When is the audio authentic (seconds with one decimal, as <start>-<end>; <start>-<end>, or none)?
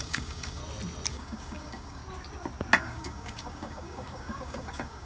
0.6-1.1; 2.0-2.8